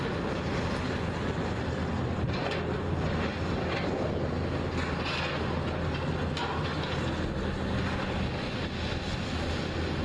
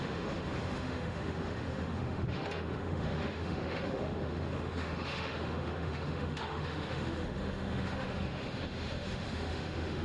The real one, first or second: first